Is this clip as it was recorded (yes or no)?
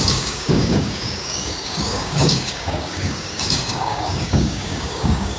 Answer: no